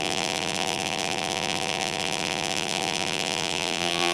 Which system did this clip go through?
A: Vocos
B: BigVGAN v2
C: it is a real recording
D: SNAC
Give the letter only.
B